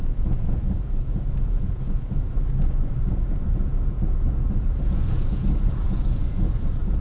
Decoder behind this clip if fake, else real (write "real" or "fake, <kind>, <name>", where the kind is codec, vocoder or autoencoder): fake, vocoder, Vocos